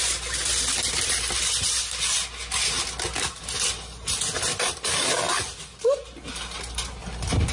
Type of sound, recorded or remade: recorded